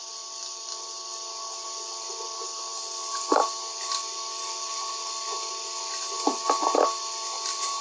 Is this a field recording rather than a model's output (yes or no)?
yes